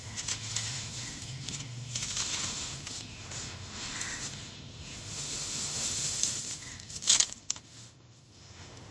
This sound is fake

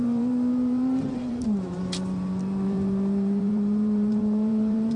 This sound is fake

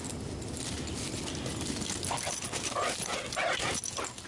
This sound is real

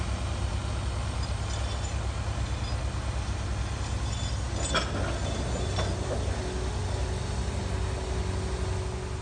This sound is real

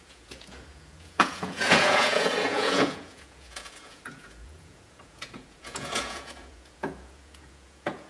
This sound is fake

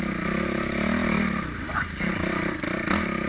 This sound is real